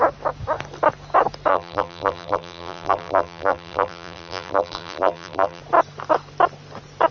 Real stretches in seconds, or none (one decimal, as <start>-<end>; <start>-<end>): 0.0-1.5; 5.6-7.1